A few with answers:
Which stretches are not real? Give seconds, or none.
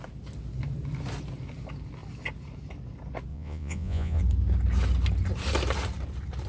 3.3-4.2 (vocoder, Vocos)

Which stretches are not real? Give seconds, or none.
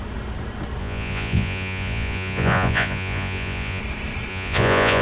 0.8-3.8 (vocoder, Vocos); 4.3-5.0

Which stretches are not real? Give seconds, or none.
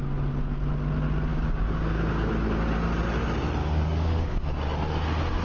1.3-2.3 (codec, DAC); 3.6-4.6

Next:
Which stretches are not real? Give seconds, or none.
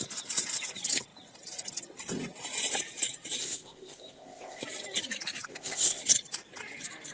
3.4-4.6 (codec, ZipCodec); 5.5-6.0